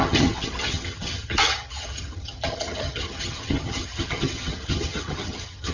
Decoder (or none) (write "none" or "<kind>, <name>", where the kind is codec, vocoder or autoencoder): vocoder, HiFi-GAN